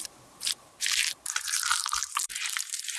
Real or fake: fake